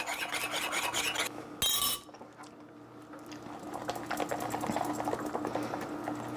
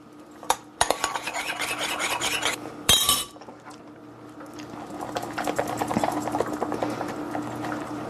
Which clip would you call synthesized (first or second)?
second